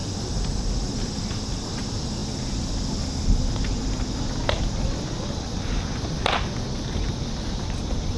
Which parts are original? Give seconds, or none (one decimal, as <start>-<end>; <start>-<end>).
0.0-8.2